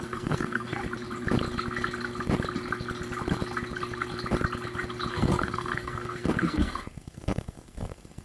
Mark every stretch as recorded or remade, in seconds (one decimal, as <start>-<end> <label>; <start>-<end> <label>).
0.0-0.8 remade; 0.8-5.1 recorded; 5.1-8.2 remade